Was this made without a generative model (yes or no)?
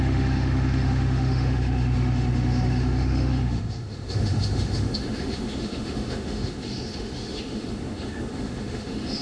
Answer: no